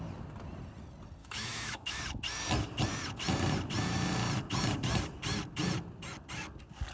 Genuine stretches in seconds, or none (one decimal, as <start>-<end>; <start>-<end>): 0.0-1.2; 2.0-6.9

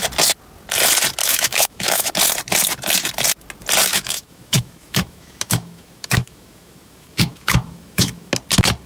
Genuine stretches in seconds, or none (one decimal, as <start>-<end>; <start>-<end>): 0.0-1.2; 2.1-3.9; 8.3-8.9